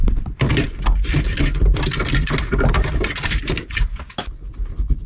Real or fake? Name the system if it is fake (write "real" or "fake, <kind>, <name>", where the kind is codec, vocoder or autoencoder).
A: real